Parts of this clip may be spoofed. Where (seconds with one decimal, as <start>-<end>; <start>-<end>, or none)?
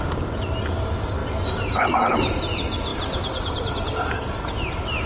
2.9-4.3